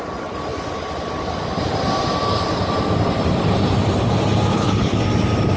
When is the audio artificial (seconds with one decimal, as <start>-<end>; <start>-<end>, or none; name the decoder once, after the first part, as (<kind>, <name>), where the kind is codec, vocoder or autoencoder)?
4.5-5.0 (codec, HILCodec)